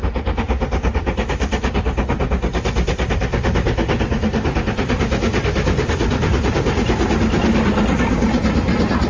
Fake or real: real